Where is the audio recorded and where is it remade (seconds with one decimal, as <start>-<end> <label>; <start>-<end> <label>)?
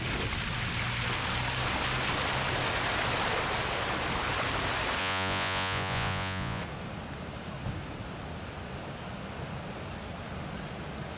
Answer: 0.0-5.0 recorded; 5.0-6.6 remade; 6.6-11.2 recorded